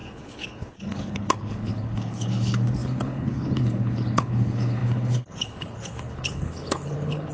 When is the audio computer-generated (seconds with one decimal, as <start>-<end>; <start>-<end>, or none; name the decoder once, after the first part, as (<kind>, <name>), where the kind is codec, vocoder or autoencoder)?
0.0-7.3 (codec, HILCodec)